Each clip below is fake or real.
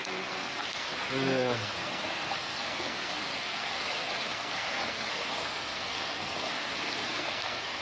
fake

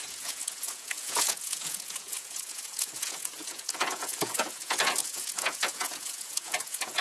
fake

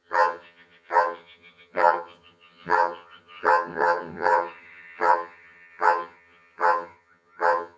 fake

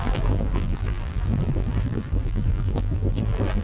fake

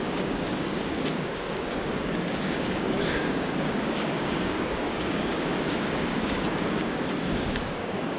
fake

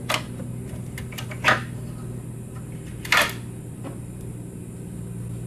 real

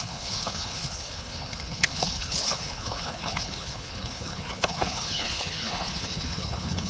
fake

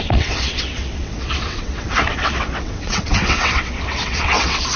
fake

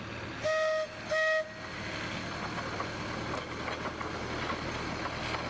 real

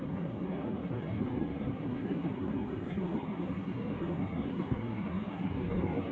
fake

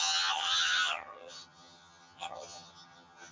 fake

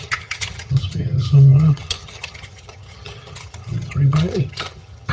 fake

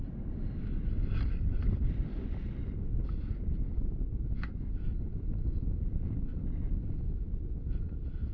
real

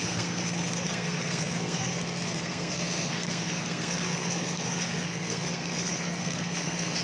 fake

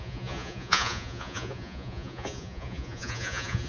fake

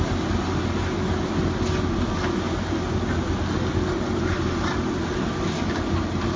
real